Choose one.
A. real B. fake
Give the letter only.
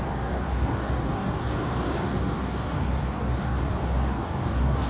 B